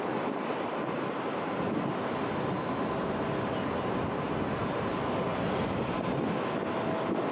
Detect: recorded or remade recorded